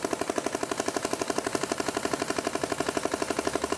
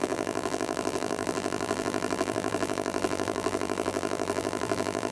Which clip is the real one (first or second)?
first